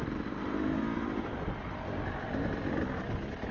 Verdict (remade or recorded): recorded